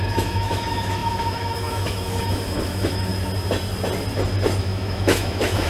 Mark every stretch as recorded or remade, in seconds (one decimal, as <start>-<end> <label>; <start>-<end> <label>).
0.0-3.1 remade; 3.1-4.6 recorded; 4.6-5.7 remade